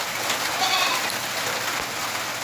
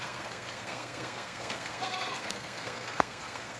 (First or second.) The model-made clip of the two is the second